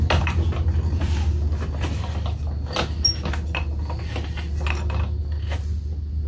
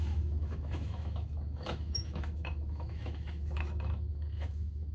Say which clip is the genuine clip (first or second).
first